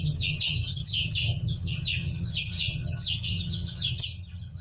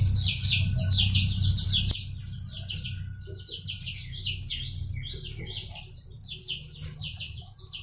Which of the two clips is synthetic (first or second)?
first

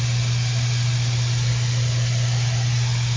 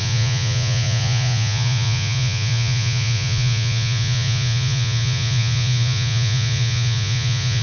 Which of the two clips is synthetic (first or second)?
second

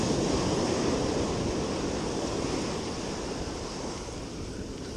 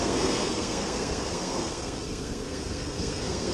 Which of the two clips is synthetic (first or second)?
second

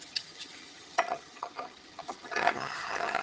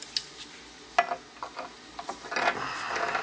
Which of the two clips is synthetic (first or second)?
first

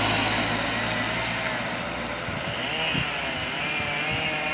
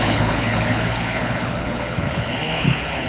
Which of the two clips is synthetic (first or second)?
second